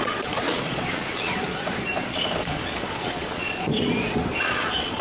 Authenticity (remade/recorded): remade